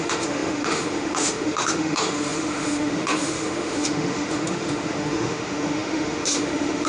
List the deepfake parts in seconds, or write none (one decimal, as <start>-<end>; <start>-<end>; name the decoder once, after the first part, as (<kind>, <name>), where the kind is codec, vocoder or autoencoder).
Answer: 0.0-6.9 (autoencoder, DAC-VAE)